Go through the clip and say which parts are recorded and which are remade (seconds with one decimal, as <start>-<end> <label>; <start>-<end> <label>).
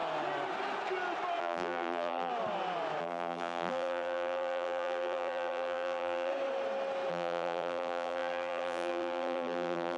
0.0-1.4 recorded; 1.4-2.3 remade; 2.3-3.0 recorded; 3.0-6.3 remade; 6.3-7.1 recorded; 7.1-10.0 remade